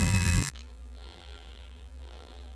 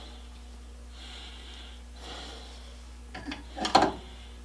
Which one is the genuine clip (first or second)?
second